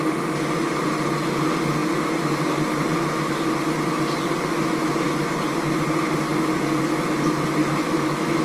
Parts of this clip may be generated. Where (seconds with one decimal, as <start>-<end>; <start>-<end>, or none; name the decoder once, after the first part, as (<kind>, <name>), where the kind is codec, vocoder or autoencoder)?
7.6-8.4 (autoencoder, DAC-VAE)